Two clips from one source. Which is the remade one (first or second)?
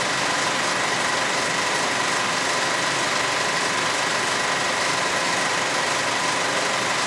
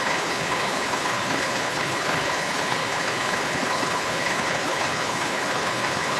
second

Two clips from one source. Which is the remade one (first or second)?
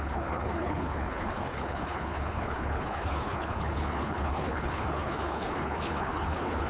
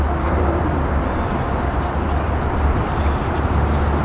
first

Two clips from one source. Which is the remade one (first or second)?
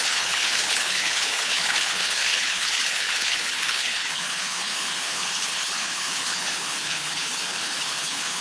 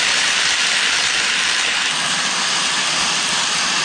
first